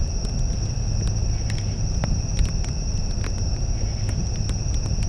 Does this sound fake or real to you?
real